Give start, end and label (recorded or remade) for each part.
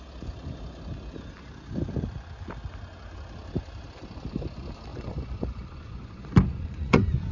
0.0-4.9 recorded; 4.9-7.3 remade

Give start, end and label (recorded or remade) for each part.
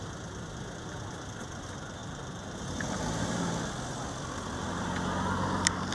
0.0-5.9 recorded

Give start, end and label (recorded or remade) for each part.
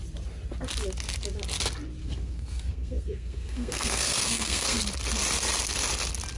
0.0-2.0 recorded; 2.0-4.8 remade; 4.8-6.4 recorded